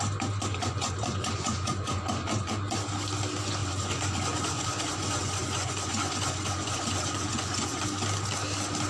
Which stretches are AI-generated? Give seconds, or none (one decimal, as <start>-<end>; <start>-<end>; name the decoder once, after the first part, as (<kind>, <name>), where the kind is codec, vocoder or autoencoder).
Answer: 0.5-2.5 (vocoder, Vocos); 3.6-7.8